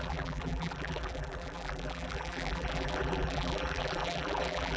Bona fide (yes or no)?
no